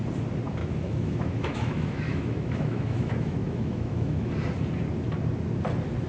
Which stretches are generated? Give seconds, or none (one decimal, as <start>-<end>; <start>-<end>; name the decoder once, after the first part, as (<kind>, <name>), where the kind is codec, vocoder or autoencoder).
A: 0.6-4.3 (autoencoder, DAC-VAE)